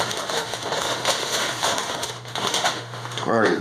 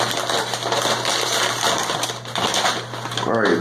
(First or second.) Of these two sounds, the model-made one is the first